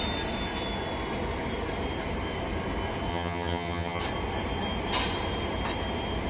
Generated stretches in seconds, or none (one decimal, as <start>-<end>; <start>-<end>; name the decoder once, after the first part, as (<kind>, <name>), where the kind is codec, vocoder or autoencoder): 3.1-4.0 (vocoder, HiFi-GAN)